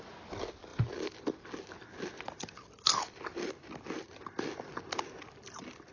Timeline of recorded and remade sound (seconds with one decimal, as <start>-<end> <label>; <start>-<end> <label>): 0.0-5.9 recorded